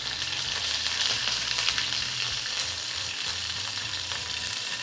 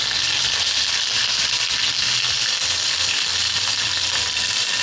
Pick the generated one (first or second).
first